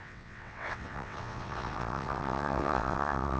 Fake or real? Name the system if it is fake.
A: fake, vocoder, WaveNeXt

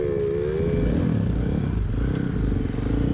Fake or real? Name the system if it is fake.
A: real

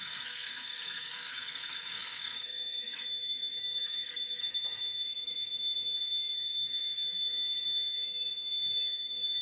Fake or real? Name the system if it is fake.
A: fake, codec, SNAC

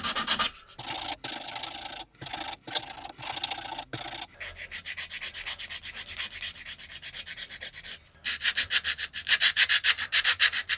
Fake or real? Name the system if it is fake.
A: real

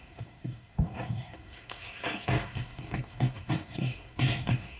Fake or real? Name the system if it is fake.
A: fake, codec, SNAC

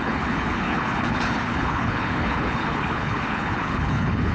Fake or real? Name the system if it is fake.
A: fake, codec, HILCodec